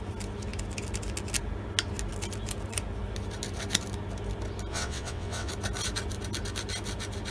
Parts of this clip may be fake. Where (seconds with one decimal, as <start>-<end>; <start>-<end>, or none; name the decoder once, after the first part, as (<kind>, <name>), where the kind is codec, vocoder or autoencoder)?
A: 4.7-5.5 (vocoder, WaveNeXt)